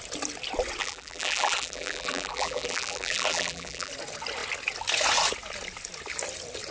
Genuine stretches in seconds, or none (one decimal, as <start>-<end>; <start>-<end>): 0.0-0.8; 3.9-6.7